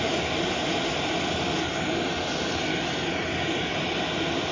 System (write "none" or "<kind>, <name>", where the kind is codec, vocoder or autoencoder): none